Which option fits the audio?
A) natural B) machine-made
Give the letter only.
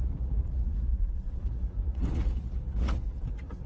B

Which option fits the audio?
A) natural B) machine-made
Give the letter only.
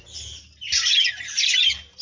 A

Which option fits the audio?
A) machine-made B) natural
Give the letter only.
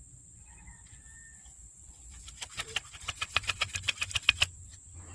B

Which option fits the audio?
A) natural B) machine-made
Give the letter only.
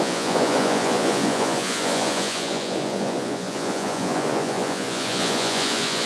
B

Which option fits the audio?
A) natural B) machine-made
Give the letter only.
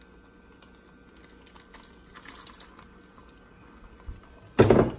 A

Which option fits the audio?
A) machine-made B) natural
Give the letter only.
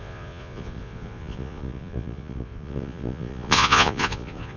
A